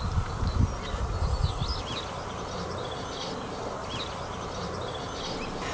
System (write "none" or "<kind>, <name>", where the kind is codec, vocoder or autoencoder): none